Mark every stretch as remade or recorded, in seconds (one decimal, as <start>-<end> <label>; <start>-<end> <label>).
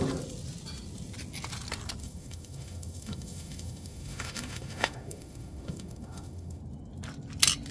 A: 0.0-2.0 recorded; 2.0-6.6 remade; 6.6-7.7 recorded